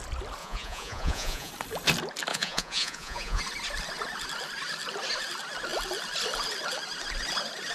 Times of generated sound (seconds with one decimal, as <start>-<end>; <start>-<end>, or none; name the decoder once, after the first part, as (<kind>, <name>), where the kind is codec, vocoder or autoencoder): 0.4-1.5 (vocoder, Vocos); 2.3-3.4